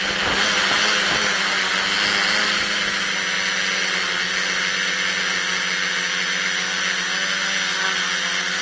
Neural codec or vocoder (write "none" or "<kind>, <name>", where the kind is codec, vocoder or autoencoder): none